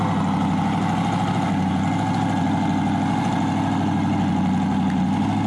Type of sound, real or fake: real